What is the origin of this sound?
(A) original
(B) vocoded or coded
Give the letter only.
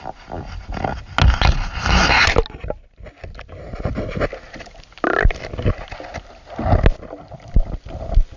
A